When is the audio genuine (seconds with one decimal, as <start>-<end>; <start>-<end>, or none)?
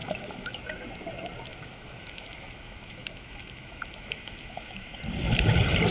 0.6-1.5; 5.0-5.9